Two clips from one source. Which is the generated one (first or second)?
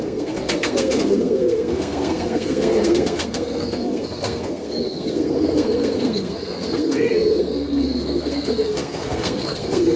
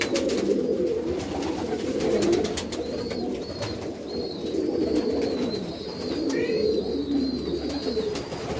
first